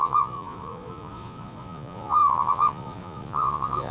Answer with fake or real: fake